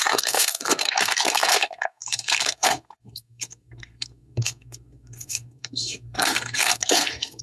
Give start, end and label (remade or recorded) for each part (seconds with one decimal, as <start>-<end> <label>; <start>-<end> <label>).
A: 0.0-7.4 remade